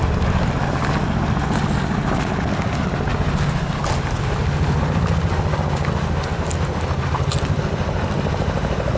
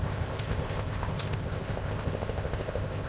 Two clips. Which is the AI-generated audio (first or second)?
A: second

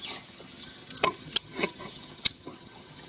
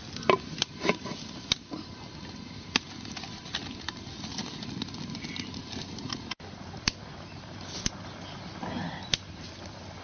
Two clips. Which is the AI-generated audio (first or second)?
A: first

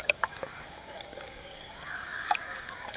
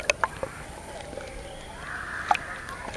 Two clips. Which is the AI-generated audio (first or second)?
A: first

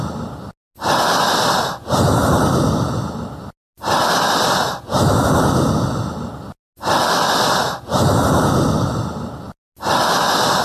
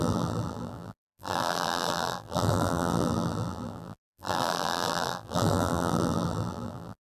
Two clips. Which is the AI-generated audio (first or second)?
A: second